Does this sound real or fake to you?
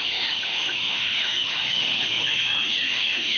fake